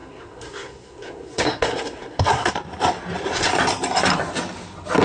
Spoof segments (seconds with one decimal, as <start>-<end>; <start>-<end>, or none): 0.0-2.5